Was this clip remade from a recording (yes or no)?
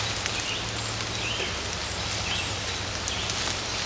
no